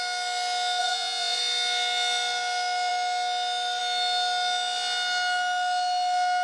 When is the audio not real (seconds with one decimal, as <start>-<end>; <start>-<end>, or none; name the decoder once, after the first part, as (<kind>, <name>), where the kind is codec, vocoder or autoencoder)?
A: 0.8-1.4 (vocoder, Vocos)